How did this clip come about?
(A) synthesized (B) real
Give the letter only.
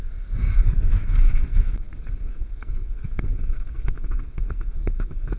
A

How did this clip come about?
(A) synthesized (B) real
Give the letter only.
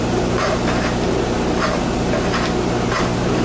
B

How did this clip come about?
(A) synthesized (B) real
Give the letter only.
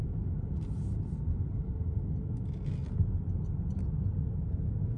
B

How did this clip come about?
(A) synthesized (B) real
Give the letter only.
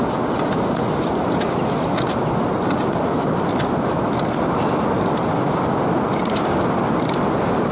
B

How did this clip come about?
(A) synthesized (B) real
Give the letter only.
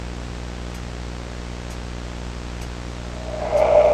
B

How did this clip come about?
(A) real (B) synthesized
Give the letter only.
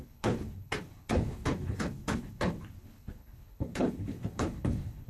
B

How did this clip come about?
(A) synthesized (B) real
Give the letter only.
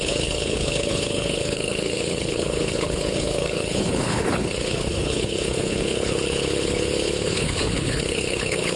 A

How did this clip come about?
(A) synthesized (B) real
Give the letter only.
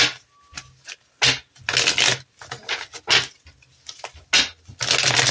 B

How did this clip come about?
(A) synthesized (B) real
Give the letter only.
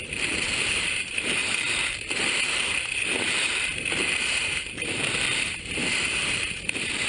A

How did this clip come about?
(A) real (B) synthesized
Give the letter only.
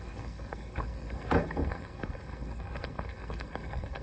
B